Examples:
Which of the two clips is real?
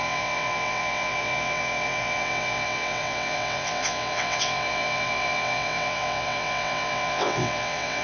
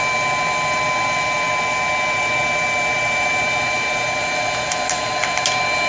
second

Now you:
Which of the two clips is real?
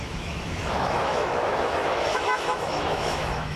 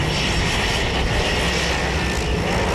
second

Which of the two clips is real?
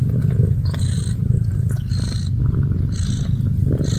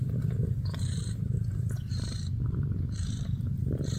first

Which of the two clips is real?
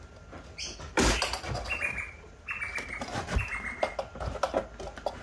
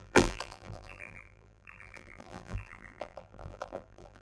first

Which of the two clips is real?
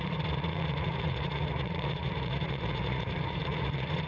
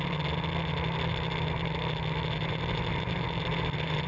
second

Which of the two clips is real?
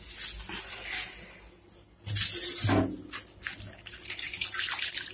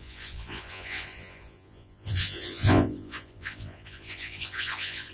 first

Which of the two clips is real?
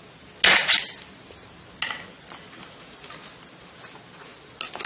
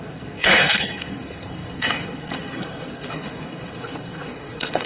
first